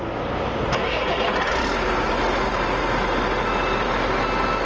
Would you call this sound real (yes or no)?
yes